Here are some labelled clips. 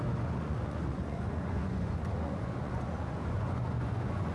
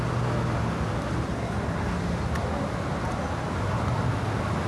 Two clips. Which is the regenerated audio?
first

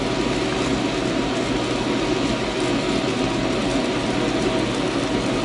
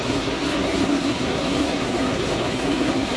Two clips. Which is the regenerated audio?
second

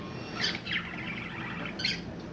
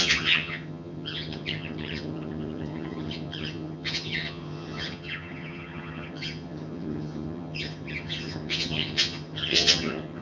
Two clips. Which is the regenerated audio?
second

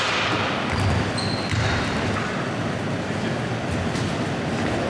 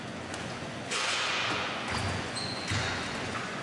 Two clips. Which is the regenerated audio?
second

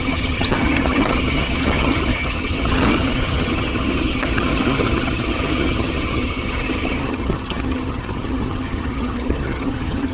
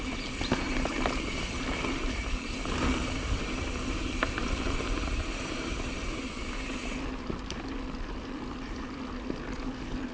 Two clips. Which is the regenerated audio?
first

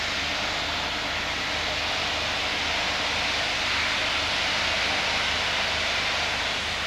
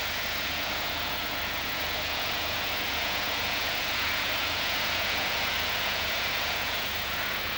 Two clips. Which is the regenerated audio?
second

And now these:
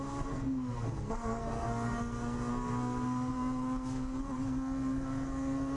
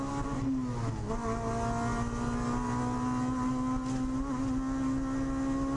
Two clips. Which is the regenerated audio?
first